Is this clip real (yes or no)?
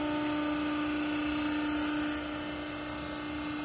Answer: yes